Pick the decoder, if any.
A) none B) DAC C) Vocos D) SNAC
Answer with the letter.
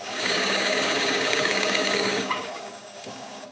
B